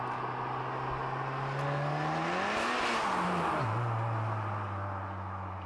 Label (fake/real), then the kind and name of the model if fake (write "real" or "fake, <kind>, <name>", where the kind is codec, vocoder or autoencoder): real